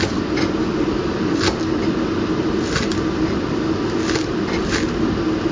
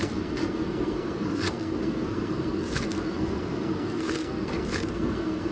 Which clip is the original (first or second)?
first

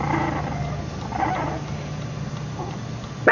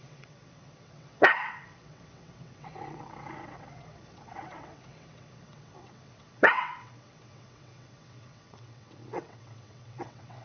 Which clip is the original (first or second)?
first